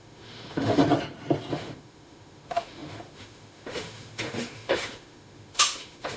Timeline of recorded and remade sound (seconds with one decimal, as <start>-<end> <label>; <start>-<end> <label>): 0.0-0.8 remade; 0.8-1.5 recorded; 1.5-6.2 remade